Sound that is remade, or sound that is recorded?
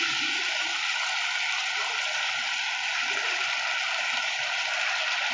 remade